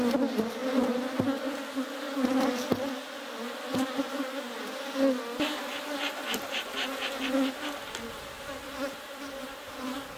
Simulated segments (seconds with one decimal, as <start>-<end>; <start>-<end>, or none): none